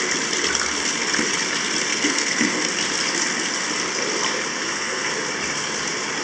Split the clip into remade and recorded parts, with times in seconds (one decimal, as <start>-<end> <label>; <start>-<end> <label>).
0.0-1.9 recorded; 1.9-2.6 remade; 2.6-4.5 recorded; 4.5-5.1 remade; 5.1-6.2 recorded